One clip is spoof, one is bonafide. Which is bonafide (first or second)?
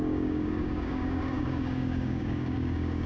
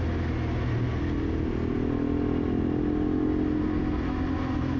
second